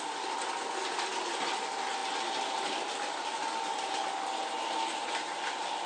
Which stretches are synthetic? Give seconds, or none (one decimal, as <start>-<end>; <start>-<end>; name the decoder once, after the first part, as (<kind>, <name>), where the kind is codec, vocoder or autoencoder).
none